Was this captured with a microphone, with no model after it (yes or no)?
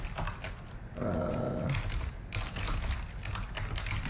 yes